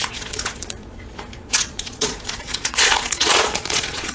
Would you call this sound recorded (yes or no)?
no